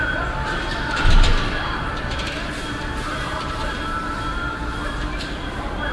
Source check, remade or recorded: remade